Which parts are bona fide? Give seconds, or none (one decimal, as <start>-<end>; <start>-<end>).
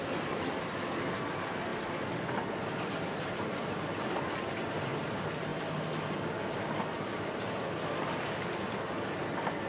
0.0-9.7